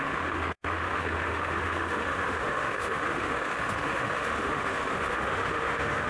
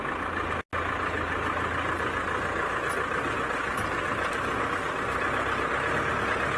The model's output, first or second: first